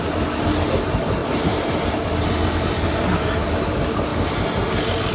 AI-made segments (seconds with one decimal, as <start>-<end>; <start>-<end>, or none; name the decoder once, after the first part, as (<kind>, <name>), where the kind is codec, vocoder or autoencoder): none